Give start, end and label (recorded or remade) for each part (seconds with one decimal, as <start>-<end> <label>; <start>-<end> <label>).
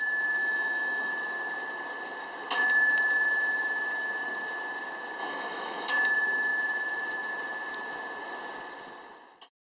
0.0-0.4 recorded; 0.4-1.1 remade; 1.1-5.2 recorded; 5.2-5.9 remade; 5.9-9.8 recorded